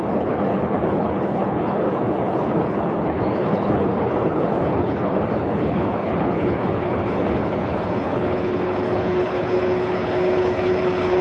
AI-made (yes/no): yes